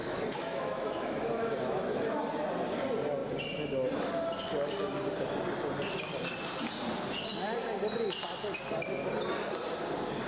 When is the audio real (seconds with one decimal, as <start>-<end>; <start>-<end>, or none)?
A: 2.2-10.3